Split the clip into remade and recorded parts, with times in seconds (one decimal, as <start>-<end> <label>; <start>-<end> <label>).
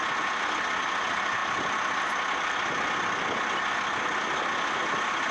0.0-5.3 recorded